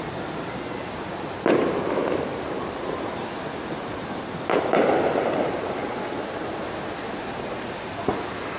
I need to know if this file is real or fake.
real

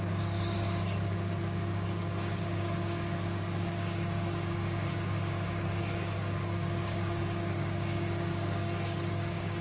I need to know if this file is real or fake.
fake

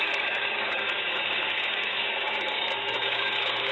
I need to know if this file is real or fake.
fake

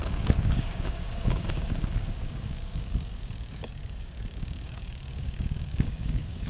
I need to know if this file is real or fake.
fake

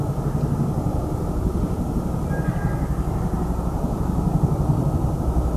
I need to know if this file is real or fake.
real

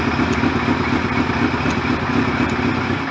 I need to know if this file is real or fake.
real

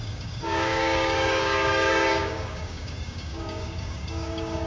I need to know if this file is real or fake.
fake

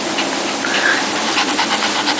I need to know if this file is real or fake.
real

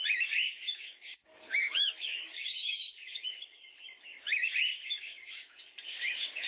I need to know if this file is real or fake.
fake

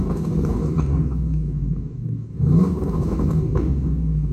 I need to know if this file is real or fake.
fake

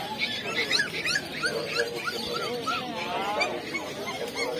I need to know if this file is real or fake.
real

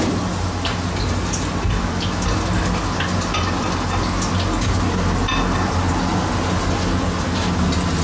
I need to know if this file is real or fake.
real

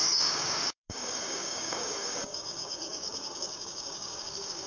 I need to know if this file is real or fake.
fake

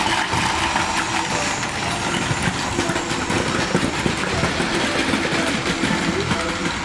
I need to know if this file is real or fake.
real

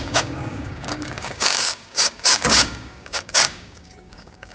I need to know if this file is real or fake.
fake